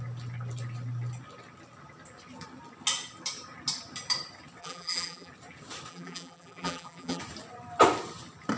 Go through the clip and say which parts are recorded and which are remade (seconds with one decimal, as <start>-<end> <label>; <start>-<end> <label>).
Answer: 0.0-4.6 recorded; 4.6-5.3 remade; 5.3-5.9 recorded; 5.9-7.2 remade; 7.2-8.6 recorded